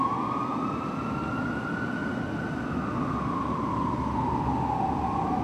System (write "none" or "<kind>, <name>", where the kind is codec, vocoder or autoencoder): none